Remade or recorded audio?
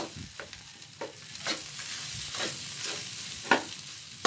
recorded